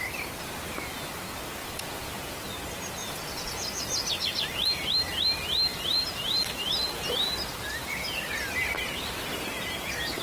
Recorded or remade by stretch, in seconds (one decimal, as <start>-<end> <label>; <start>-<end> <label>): 0.0-1.6 recorded; 1.6-2.3 remade; 2.3-3.0 recorded; 3.0-3.8 remade; 3.8-10.2 recorded